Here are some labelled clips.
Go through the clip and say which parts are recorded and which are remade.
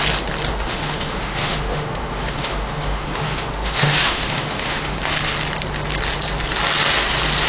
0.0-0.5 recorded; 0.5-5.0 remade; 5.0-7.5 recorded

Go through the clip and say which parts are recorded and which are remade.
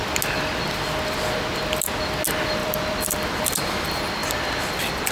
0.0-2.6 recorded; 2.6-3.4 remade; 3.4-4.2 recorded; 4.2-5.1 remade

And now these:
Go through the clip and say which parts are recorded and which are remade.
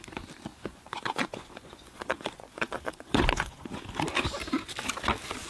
0.0-0.5 recorded; 0.5-3.8 remade; 3.8-5.5 recorded